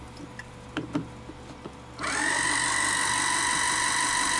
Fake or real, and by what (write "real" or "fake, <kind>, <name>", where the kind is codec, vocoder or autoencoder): real